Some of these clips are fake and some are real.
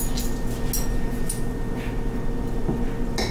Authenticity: real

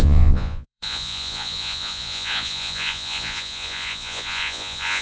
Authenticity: fake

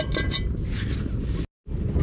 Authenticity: real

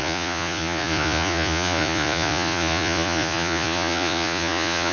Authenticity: fake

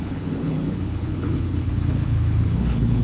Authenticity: fake